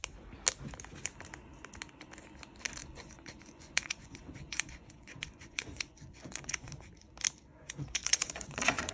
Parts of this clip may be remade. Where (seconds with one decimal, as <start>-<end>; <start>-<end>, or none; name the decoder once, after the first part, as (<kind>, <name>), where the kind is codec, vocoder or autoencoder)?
2.8-6.7 (vocoder, Vocos); 7.5-8.9